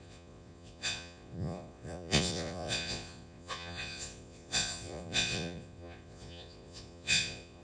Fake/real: fake